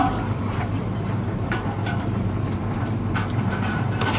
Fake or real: fake